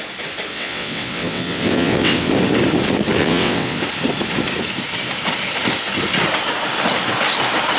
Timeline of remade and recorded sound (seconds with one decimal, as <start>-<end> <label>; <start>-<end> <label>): 0.0-0.5 recorded; 0.5-2.3 remade; 2.3-3.2 recorded; 3.2-3.8 remade; 3.8-7.8 recorded